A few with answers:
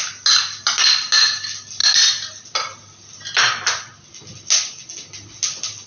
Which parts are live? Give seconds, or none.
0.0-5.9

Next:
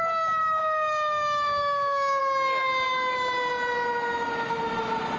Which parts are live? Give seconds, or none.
0.0-0.6; 2.2-5.2

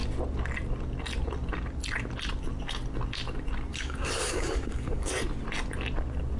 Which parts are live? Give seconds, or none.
0.0-3.7; 5.1-6.4

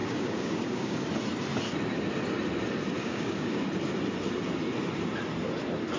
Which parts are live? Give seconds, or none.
1.0-3.0; 3.6-6.0

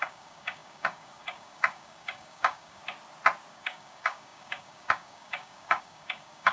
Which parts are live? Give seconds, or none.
2.8-3.5